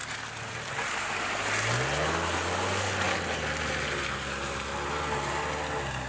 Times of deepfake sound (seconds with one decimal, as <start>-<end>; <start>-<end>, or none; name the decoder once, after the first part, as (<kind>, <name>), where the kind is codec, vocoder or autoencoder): none